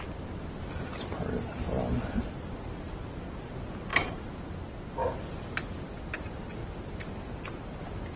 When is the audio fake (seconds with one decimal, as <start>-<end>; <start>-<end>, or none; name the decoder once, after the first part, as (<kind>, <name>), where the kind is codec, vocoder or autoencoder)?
none